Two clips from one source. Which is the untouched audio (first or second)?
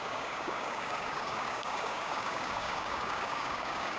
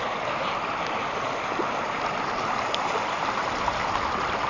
second